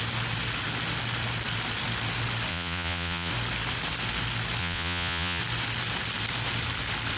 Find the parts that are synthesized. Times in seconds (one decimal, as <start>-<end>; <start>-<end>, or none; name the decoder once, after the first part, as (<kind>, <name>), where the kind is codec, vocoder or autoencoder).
2.5-3.3 (vocoder, Vocos); 4.6-5.4